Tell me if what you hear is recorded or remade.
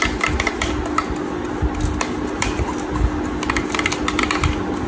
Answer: recorded